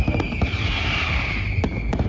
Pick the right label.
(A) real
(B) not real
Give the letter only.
B